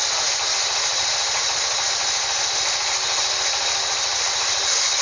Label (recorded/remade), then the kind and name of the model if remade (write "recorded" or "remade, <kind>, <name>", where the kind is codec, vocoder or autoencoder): recorded